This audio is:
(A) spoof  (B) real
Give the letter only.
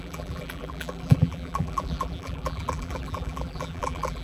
A